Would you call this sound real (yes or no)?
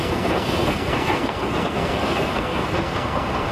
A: no